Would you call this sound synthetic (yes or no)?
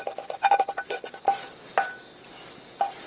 yes